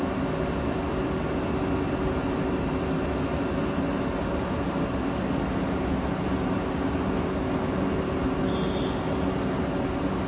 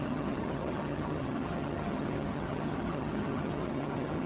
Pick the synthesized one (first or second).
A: second